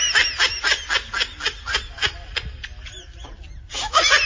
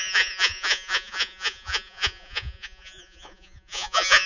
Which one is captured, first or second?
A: first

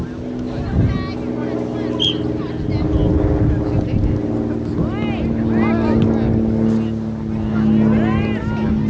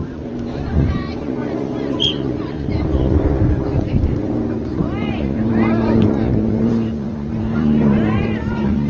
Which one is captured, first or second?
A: first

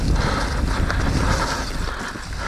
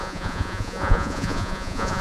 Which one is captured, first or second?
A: first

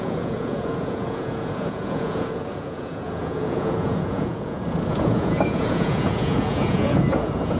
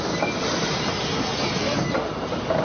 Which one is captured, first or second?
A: second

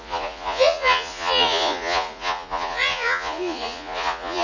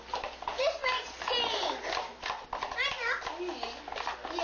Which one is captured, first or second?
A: second